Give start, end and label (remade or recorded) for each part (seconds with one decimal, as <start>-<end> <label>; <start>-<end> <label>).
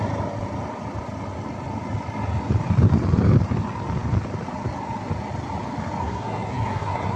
0.0-6.0 recorded; 6.0-7.2 remade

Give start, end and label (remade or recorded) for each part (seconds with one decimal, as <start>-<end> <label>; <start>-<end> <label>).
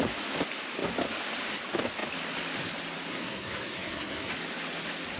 0.0-3.1 recorded; 3.1-4.3 remade; 4.3-5.2 recorded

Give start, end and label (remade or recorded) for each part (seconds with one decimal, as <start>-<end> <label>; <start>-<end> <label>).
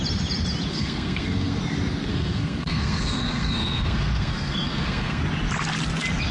0.0-0.7 recorded; 0.7-1.6 remade; 1.6-2.1 recorded; 2.1-5.2 remade; 5.2-6.3 recorded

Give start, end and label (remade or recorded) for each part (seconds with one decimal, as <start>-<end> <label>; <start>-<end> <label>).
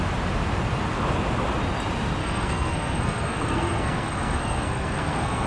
0.0-2.2 recorded; 2.2-5.5 remade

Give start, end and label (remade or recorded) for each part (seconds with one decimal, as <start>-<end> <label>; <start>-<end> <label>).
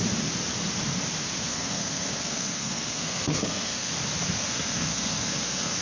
0.0-1.5 recorded; 1.5-3.9 remade; 3.9-4.4 recorded; 4.4-5.8 remade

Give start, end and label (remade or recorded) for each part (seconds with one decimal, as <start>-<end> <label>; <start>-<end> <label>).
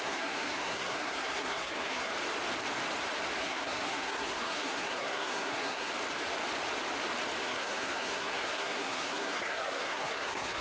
0.0-2.1 remade; 2.1-3.4 recorded; 3.4-5.9 remade; 5.9-7.4 recorded; 7.4-10.6 remade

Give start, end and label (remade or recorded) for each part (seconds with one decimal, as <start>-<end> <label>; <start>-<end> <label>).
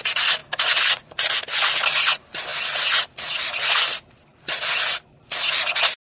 0.0-6.2 recorded